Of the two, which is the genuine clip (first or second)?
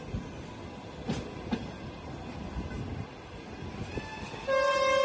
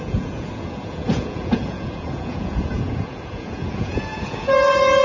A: first